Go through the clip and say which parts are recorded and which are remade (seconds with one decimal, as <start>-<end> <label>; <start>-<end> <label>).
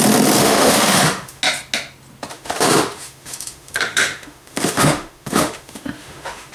0.0-0.4 recorded; 0.4-1.4 remade; 1.4-2.3 recorded; 2.3-6.5 remade